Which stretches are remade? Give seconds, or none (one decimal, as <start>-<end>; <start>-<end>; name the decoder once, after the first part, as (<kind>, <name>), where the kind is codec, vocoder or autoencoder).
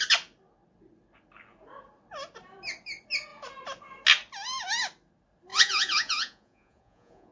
5.5-7.3 (vocoder, Vocos)